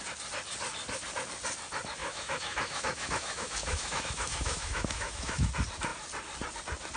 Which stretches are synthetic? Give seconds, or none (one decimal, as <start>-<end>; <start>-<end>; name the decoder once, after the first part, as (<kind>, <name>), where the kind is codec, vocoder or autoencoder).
2.0-5.5 (autoencoder, DAC-VAE)